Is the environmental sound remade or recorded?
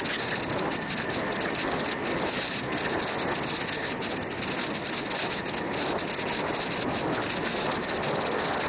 recorded